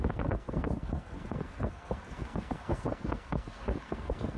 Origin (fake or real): fake